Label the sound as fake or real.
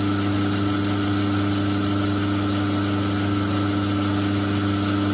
real